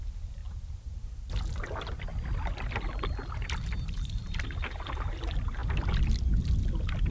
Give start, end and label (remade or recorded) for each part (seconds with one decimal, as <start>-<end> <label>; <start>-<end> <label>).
0.0-2.1 recorded; 2.1-4.2 remade; 4.2-7.1 recorded